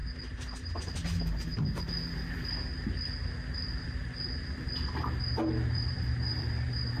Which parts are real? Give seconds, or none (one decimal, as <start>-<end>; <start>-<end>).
0.0-0.8; 1.5-5.7